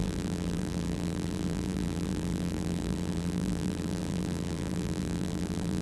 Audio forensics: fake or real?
fake